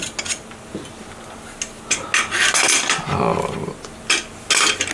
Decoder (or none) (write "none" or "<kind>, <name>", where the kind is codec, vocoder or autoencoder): none